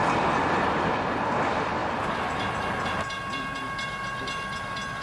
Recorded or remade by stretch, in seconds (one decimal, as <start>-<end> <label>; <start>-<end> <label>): 0.0-5.0 recorded